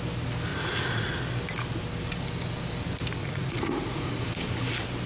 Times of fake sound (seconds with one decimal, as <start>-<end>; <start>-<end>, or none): 0.5-1.1; 3.2-4.2